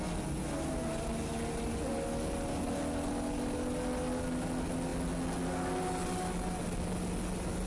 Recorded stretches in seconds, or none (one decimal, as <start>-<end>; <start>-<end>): 0.0-7.7